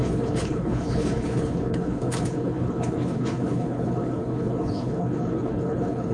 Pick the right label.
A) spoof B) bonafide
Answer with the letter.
A